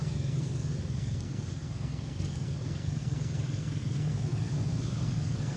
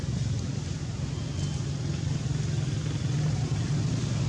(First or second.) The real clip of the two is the second